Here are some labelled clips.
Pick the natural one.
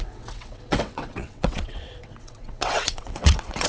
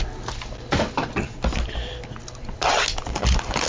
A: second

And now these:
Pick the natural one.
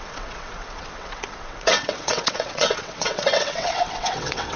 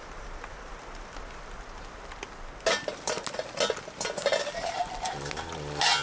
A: second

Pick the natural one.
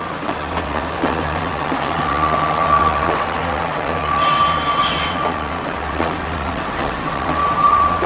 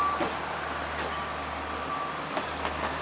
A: second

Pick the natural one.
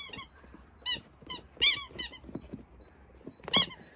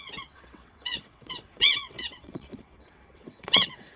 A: first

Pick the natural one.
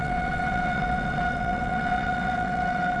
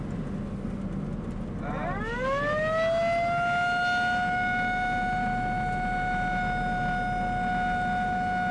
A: second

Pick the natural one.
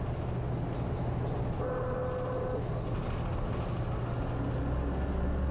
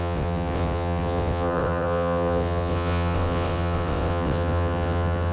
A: first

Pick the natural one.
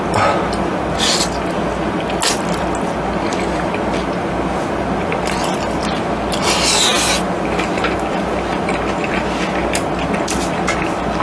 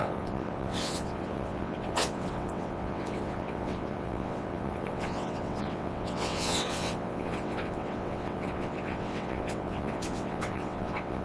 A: first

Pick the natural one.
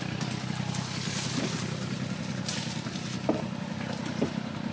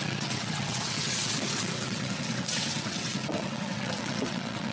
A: first